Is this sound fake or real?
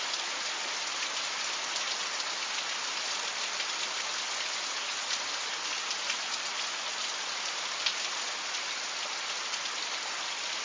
real